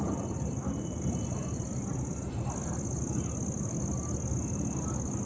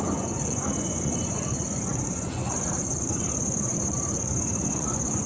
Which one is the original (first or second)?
first